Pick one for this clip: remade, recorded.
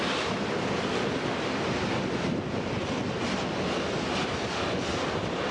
recorded